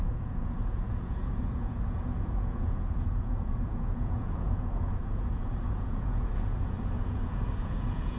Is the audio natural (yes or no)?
no